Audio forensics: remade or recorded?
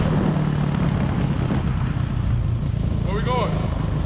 recorded